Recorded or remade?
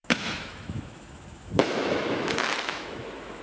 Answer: remade